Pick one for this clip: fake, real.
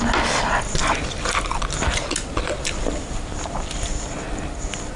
real